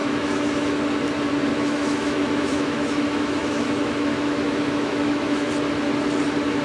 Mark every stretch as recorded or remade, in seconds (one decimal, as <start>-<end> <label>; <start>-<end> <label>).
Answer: 0.0-0.8 remade; 0.8-1.5 recorded; 1.5-5.5 remade; 5.5-6.6 recorded